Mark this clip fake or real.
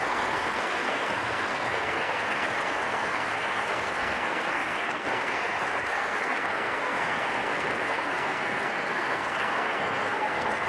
fake